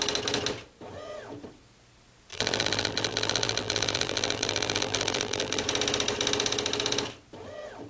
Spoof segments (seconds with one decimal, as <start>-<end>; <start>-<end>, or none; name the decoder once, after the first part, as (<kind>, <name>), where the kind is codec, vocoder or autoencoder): 2.3-5.6 (vocoder, BigVGAN v2)